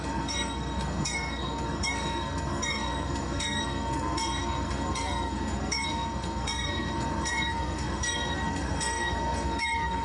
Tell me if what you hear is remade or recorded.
remade